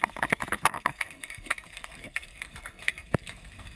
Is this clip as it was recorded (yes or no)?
no